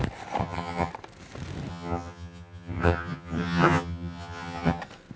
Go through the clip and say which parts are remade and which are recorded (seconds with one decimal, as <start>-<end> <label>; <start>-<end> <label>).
0.0-0.4 recorded; 0.4-0.9 remade; 0.9-1.7 recorded; 1.7-4.8 remade; 4.8-5.2 recorded